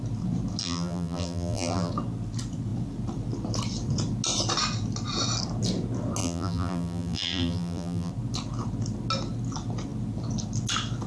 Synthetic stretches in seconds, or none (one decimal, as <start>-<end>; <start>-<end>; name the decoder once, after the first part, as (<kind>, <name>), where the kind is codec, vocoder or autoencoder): 0.6-1.9 (vocoder, BigVGAN v2); 6.2-8.1